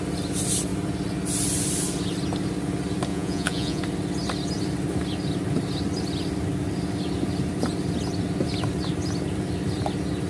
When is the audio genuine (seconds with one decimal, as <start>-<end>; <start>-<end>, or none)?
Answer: 0.0-3.1; 3.8-10.3